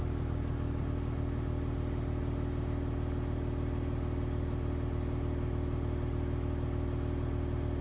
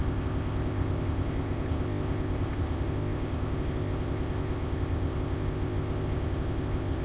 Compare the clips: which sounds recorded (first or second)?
first